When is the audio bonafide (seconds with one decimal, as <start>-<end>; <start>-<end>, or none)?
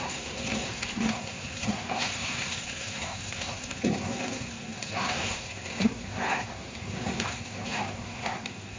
none